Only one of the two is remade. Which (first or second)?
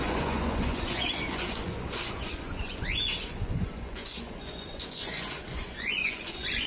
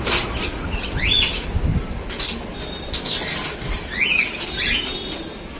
first